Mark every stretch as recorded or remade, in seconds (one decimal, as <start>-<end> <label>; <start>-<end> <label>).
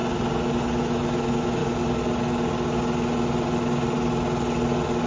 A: 0.0-0.8 recorded; 0.8-1.6 remade; 1.6-5.1 recorded